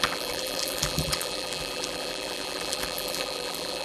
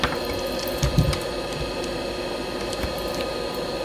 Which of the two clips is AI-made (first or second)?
first